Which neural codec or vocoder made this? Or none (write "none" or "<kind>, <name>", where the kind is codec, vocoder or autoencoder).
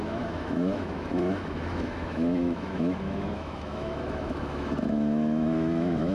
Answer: autoencoder, DAC-VAE